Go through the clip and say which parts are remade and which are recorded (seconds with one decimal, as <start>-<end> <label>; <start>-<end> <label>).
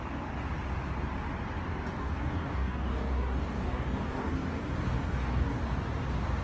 0.0-2.0 recorded; 2.0-5.6 remade; 5.6-6.4 recorded